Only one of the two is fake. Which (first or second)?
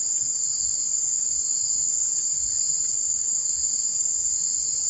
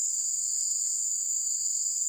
first